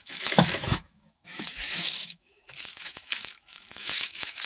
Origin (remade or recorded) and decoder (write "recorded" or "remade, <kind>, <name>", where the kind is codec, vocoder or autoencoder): remade, autoencoder, DAC-VAE